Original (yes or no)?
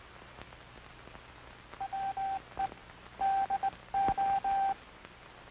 yes